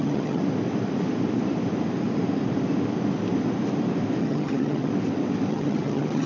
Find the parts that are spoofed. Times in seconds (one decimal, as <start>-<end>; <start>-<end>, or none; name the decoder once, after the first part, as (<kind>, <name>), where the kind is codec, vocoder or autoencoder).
0.0-0.4 (vocoder, HiFi-GAN); 4.2-4.9; 5.5-6.3